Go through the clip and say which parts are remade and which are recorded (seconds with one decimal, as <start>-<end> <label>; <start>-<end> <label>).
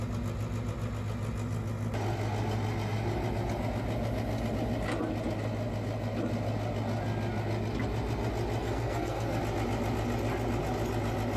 0.0-8.6 recorded; 8.6-9.4 remade; 9.4-11.4 recorded